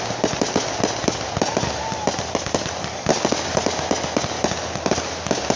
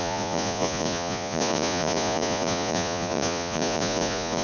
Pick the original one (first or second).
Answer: first